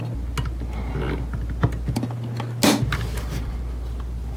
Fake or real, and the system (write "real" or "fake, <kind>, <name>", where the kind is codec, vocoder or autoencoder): real